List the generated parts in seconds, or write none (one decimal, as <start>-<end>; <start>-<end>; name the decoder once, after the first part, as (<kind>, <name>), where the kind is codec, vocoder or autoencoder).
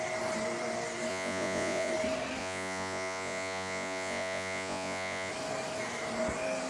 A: 1.1-1.9 (vocoder, Vocos); 2.4-5.3